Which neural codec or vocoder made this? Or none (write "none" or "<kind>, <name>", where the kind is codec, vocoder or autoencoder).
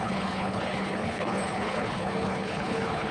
codec, HILCodec